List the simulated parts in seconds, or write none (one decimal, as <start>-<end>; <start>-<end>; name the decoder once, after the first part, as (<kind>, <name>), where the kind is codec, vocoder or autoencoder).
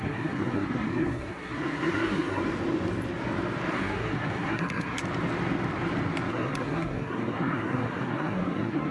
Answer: 0.0-2.4 (codec, SNAC); 3.7-5.0; 6.3-8.9